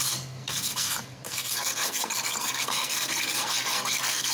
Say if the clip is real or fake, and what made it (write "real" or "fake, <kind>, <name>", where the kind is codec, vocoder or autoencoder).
fake, codec, SNAC